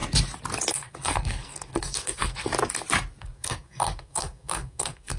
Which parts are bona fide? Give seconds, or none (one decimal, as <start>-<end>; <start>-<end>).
0.0-0.7; 2.5-3.2